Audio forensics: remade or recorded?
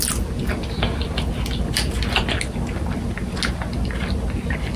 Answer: recorded